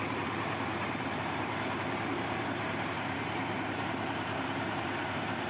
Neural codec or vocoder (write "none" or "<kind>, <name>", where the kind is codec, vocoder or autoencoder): vocoder, BigVGAN v2